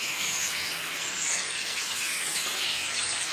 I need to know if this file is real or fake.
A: fake